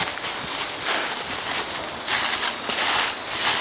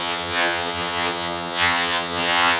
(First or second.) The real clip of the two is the first